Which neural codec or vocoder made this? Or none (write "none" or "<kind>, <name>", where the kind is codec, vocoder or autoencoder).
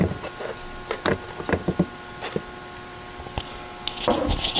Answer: none